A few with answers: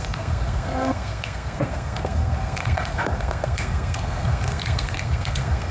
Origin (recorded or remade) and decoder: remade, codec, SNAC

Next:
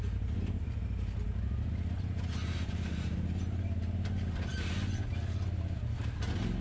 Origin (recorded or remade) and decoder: recorded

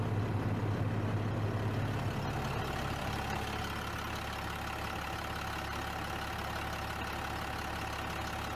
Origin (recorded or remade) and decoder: recorded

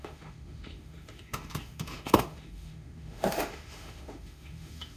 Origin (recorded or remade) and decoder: remade, autoencoder, DAC-VAE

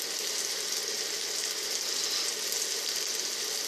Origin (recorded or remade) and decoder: recorded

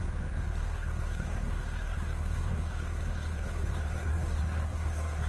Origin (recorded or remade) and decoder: remade, codec, SNAC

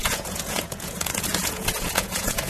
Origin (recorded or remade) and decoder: remade, vocoder, Vocos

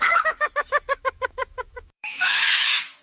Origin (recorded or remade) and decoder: remade, autoencoder, DAC-VAE